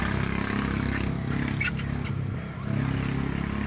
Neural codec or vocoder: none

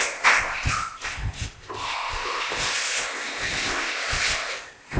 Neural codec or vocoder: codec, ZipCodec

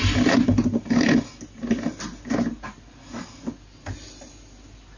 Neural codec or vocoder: none